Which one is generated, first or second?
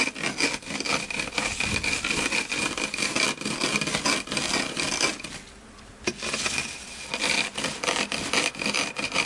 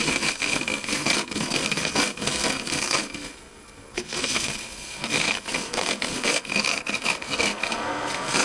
second